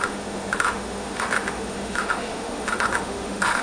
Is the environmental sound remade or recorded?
remade